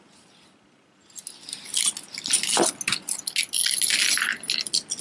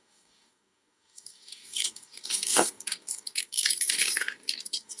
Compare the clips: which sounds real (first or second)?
first